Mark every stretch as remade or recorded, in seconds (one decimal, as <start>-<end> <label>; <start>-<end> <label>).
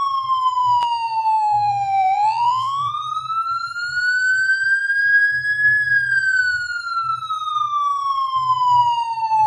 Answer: 0.0-0.6 recorded; 0.6-2.9 remade; 2.9-9.5 recorded